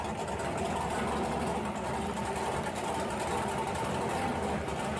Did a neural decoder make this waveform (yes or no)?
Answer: no